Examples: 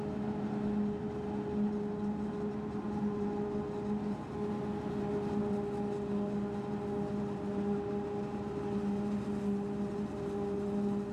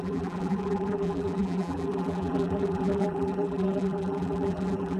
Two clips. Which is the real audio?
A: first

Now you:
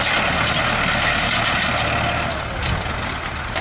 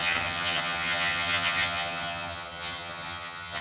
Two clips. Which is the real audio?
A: first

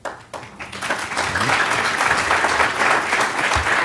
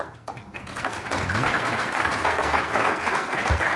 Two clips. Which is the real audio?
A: first